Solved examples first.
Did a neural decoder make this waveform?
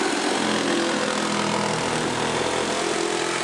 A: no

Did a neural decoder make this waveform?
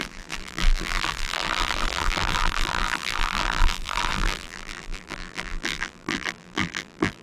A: yes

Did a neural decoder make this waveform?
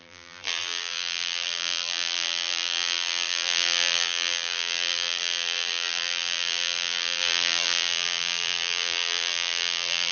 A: yes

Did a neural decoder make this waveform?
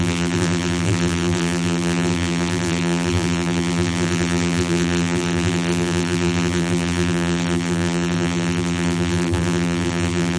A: yes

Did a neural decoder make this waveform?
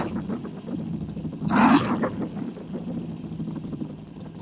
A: yes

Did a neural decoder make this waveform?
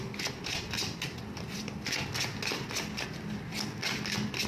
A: no